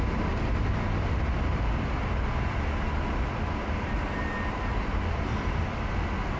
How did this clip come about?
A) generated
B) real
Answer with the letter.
B